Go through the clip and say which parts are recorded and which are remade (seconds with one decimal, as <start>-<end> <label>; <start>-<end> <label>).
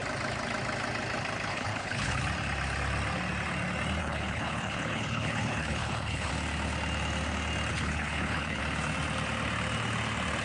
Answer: 0.0-1.5 recorded; 1.5-2.2 remade; 2.2-4.0 recorded; 4.0-6.3 remade; 6.3-7.7 recorded; 7.7-8.6 remade; 8.6-10.4 recorded